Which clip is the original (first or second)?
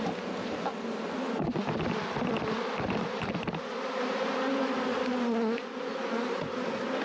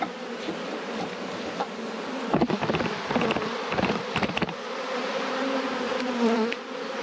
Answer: first